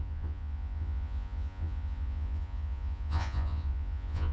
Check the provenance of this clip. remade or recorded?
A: remade